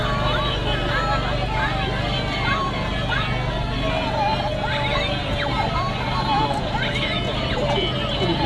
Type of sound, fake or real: real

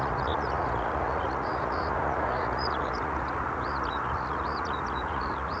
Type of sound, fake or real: fake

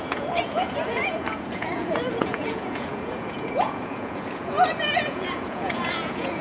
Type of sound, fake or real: fake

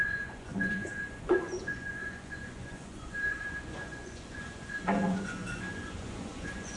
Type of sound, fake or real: fake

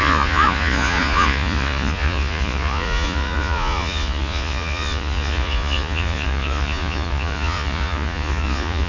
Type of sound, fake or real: fake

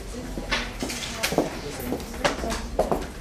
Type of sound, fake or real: real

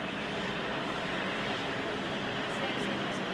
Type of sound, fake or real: real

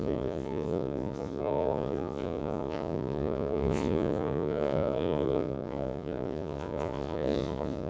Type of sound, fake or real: fake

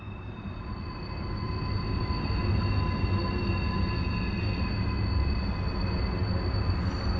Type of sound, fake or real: real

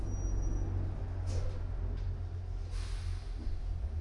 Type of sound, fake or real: real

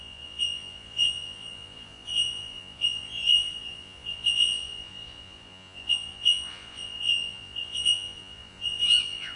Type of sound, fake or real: fake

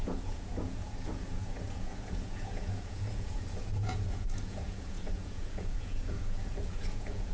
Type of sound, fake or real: fake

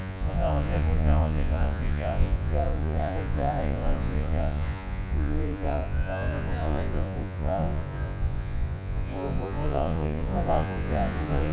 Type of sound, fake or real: fake